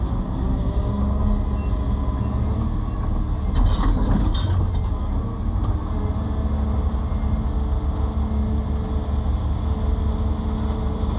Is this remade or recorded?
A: recorded